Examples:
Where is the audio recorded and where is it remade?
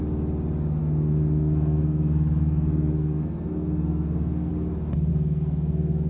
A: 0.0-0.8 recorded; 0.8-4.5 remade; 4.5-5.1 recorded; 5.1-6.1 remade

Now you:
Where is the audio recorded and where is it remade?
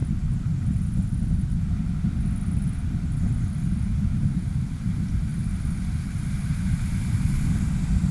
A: 0.0-8.1 recorded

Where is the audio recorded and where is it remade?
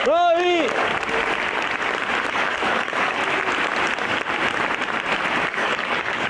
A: 0.0-0.9 remade; 0.9-2.3 recorded; 2.3-3.2 remade; 3.2-5.4 recorded; 5.4-6.3 remade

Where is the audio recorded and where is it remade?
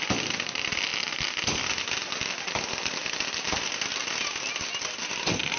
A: 0.0-5.6 recorded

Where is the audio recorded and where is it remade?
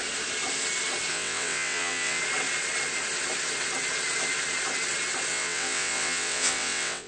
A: 0.0-1.1 recorded; 1.1-2.2 remade; 2.2-5.3 recorded; 5.3-7.1 remade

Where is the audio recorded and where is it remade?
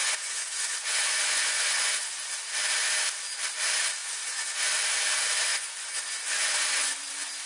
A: 0.0-2.3 remade; 2.3-4.0 recorded; 4.0-4.7 remade; 4.7-5.5 recorded; 5.5-7.1 remade; 7.1-7.5 recorded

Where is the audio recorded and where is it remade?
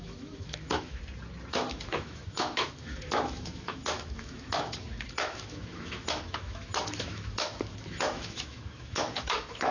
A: 0.0-1.0 remade; 1.0-1.5 recorded; 1.5-9.7 remade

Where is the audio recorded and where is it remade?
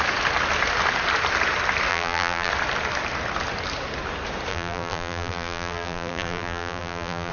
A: 0.0-1.9 recorded; 1.9-2.5 remade; 2.5-4.5 recorded; 4.5-7.3 remade